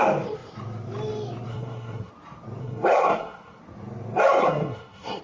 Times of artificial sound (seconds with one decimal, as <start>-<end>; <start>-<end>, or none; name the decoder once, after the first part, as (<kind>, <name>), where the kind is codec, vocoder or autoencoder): 1.5-2.1 (codec, SNAC); 2.6-3.6; 4.4-5.2